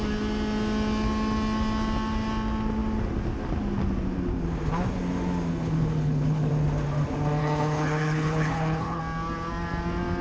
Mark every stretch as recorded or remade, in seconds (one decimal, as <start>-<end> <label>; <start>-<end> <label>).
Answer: 0.0-5.5 recorded; 5.5-6.5 remade; 6.5-7.4 recorded; 7.4-9.0 remade; 9.0-10.2 recorded